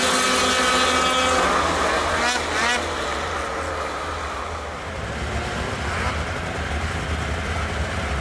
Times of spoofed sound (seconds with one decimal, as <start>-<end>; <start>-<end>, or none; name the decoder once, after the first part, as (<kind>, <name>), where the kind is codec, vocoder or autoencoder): none